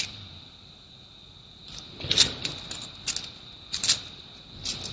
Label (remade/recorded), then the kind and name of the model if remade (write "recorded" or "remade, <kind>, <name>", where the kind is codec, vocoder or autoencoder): recorded